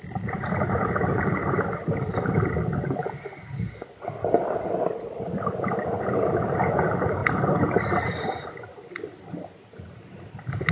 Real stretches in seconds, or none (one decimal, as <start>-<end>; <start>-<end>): 0.0-10.7